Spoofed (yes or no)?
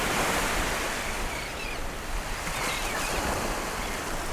no